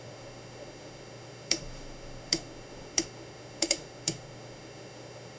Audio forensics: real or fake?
fake